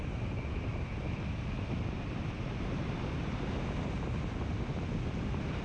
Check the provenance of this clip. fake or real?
real